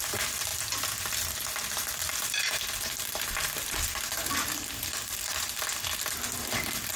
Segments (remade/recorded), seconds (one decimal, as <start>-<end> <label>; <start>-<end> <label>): 0.0-0.5 remade; 0.5-1.1 recorded; 1.1-7.0 remade